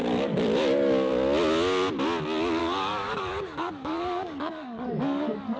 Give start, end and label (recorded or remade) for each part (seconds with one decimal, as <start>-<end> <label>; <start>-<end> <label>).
0.0-1.1 remade; 1.1-2.6 recorded; 2.6-5.6 remade